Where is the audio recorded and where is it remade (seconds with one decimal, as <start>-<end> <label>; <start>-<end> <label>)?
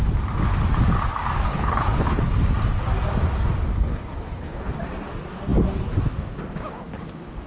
0.0-1.5 recorded; 1.5-2.2 remade; 2.2-3.7 recorded; 3.7-4.7 remade; 4.7-7.5 recorded